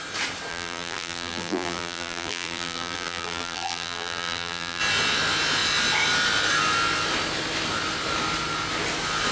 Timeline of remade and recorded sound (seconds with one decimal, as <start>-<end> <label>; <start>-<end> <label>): 0.0-0.5 recorded; 0.5-4.8 remade; 4.8-9.3 recorded